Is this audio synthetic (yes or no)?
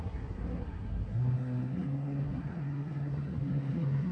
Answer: yes